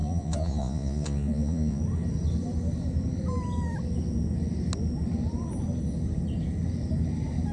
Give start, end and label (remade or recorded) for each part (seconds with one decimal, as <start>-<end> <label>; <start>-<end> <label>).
0.0-1.8 remade; 1.8-7.5 recorded

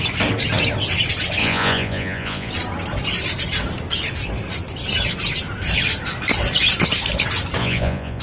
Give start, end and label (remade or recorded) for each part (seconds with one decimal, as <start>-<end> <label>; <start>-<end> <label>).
0.0-1.4 recorded; 1.4-2.5 remade; 2.5-7.6 recorded; 7.6-8.2 remade

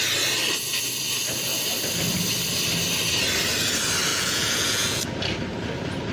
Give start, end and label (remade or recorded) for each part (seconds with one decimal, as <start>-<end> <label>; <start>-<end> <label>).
0.0-4.1 recorded; 4.1-5.0 remade; 5.0-6.1 recorded

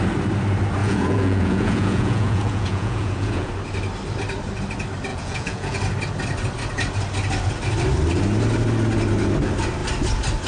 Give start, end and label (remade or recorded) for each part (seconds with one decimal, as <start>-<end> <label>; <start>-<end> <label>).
0.0-0.8 recorded; 0.8-3.5 remade; 3.5-5.1 recorded; 5.1-5.8 remade; 5.8-10.5 recorded

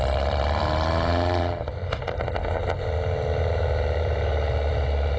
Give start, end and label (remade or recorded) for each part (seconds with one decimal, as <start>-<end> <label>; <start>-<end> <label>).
0.0-5.2 recorded

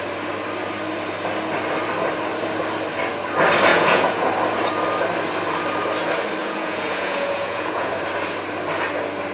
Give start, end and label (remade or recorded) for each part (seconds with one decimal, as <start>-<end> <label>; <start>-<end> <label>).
0.0-3.7 recorded; 3.7-4.3 remade; 4.3-6.4 recorded; 6.4-7.9 remade; 7.9-9.3 recorded

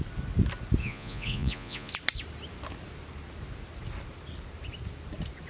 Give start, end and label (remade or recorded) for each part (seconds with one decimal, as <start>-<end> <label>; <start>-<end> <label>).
0.0-0.8 recorded; 0.8-1.9 remade; 1.9-5.5 recorded

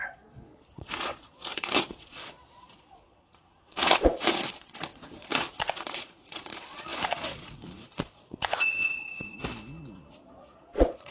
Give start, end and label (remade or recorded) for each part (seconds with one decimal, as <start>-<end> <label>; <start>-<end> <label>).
0.0-9.4 remade; 9.4-10.4 recorded; 10.4-11.1 remade